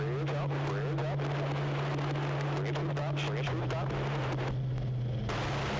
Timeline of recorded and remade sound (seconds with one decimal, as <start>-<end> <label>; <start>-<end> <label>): 0.0-5.8 recorded